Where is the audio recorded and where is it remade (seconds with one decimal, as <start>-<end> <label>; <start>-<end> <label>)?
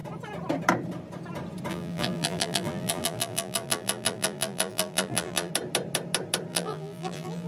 0.0-1.7 recorded; 1.7-5.5 remade; 5.5-6.5 recorded; 6.5-7.5 remade